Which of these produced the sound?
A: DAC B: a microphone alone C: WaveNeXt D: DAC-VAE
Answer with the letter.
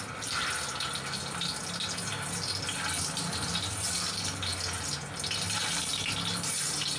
B